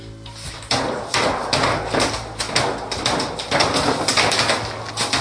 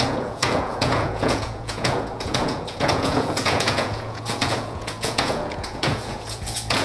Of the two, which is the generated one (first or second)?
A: second